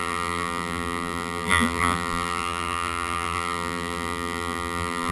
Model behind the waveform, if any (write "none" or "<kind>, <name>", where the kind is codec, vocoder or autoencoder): vocoder, BigVGAN v2